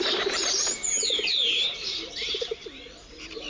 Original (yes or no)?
no